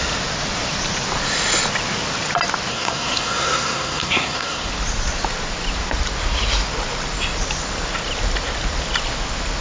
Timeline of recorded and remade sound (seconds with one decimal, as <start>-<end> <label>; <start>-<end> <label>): 0.0-2.7 recorded; 2.7-4.7 remade; 4.7-9.6 recorded